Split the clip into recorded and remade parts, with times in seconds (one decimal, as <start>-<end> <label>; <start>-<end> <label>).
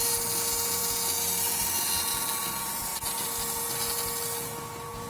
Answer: 0.0-5.1 recorded